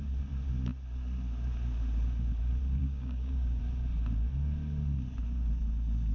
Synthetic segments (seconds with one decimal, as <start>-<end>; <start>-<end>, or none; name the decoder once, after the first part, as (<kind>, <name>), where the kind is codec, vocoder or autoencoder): 2.8-3.6 (codec, DAC)